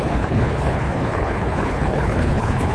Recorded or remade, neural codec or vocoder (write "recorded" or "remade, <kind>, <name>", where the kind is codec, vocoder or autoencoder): remade, codec, HILCodec